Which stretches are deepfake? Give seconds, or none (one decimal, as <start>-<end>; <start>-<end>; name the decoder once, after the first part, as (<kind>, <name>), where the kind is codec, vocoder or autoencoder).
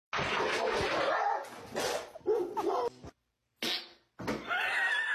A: none